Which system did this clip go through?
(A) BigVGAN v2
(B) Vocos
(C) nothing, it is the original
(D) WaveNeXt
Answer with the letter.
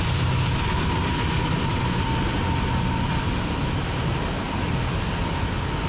C